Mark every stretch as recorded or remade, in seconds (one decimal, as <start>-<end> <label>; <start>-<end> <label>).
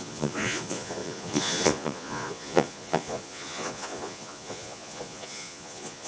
0.0-6.1 remade